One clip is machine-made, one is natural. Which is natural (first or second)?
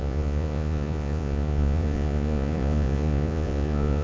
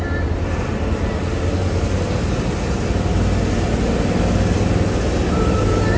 second